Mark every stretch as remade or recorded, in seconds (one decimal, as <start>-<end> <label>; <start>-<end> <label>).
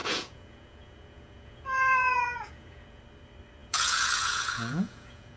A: 0.0-3.0 remade; 3.0-3.6 recorded; 3.6-5.4 remade